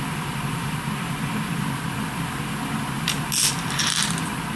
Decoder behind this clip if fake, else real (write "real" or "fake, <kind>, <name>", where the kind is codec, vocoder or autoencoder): fake, vocoder, BigVGAN v2